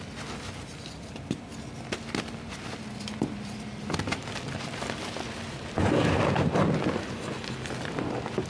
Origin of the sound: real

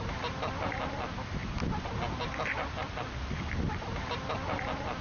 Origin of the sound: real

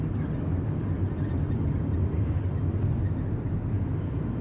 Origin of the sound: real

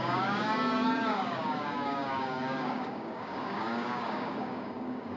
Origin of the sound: fake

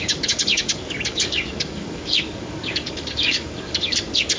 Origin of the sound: fake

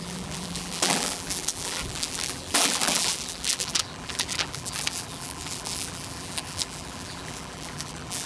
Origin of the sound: fake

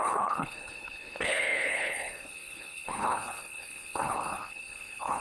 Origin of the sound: fake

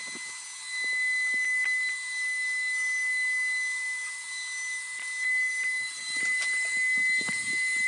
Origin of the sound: real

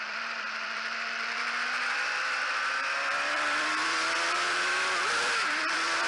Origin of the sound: fake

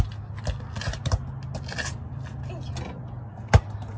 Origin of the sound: real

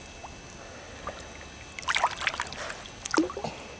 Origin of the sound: real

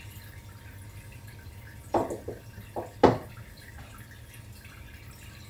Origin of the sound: real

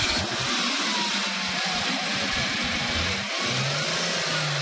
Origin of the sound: real